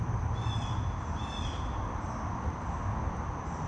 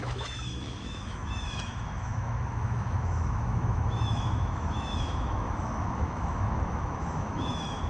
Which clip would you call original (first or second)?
first